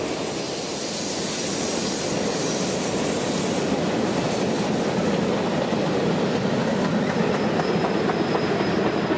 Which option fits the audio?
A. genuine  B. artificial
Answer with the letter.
A